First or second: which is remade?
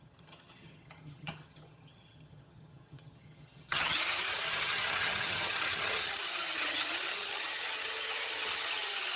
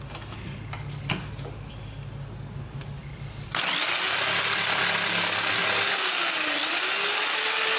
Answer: first